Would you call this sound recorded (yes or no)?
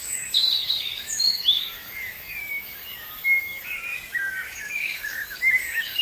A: no